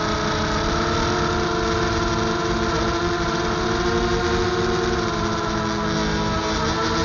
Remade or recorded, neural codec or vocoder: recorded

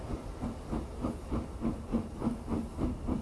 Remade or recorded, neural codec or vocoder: recorded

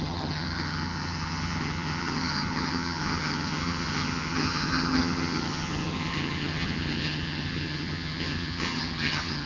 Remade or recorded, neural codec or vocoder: remade, vocoder, HiFi-GAN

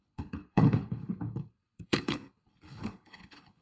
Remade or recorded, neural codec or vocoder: remade, codec, HILCodec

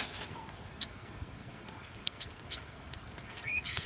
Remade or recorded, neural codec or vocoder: remade, codec, SNAC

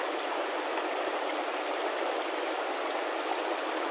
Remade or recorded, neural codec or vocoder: recorded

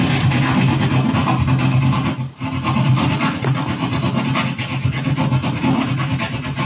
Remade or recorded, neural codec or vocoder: recorded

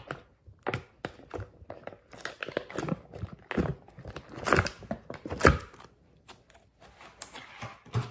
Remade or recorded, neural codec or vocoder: recorded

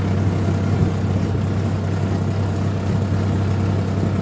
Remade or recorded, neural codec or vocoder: recorded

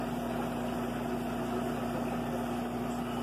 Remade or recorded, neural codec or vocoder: recorded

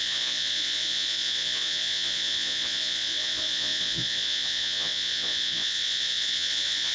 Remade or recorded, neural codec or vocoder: remade, vocoder, Vocos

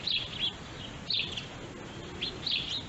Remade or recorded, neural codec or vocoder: recorded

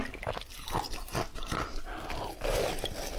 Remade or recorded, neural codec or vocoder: recorded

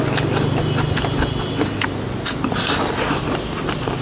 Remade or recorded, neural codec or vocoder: recorded